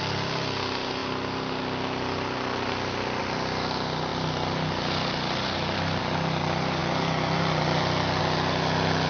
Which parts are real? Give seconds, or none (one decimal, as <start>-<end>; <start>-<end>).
0.0-9.1